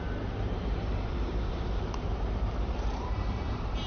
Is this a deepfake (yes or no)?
yes